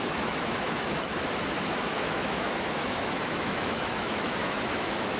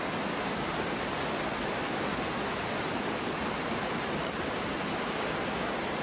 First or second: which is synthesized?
first